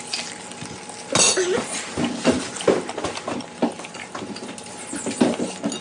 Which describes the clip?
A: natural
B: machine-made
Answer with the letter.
A